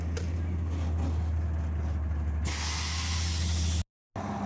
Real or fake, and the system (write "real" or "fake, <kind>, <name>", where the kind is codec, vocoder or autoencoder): real